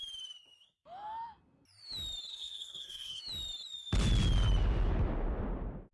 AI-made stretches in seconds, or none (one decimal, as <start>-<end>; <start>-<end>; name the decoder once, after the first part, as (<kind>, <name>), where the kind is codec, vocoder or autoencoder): 2.3-3.2 (codec, SNAC)